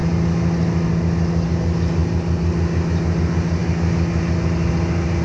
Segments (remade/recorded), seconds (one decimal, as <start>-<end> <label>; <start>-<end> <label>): 0.0-5.2 recorded